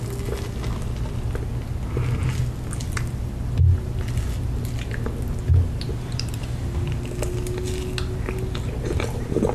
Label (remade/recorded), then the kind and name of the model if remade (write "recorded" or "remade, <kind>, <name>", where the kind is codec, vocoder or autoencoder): recorded